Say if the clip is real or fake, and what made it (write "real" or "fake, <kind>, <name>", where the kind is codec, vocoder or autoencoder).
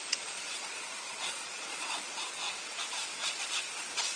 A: fake, vocoder, Vocos